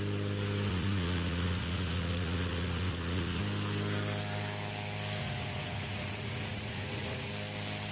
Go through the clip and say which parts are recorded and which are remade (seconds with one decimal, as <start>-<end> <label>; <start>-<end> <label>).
0.0-0.7 recorded; 0.7-3.4 remade; 3.4-5.2 recorded; 5.2-7.3 remade; 7.3-7.9 recorded